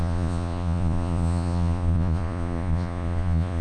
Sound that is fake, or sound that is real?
fake